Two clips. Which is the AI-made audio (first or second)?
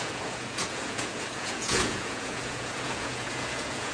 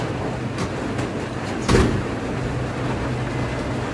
first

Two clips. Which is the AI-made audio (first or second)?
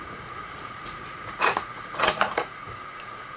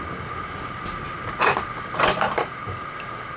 first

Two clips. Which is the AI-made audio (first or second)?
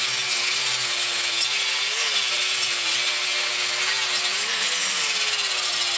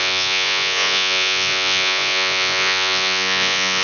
second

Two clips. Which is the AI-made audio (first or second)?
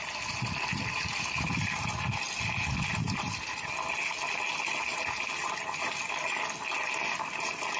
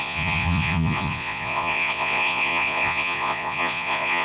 second